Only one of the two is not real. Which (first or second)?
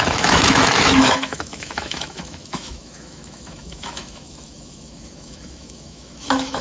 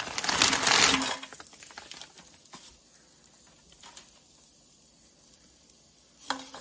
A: first